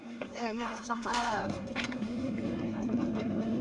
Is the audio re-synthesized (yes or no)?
yes